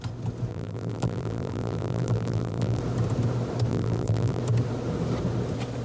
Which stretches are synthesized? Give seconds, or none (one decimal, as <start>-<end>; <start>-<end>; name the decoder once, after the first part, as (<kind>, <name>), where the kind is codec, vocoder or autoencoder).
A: 0.5-2.8 (vocoder, BigVGAN v2); 3.7-4.4